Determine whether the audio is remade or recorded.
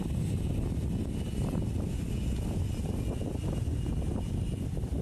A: recorded